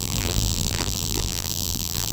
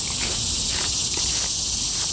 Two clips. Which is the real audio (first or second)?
second